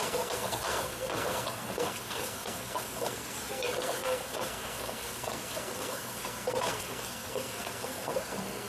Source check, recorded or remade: remade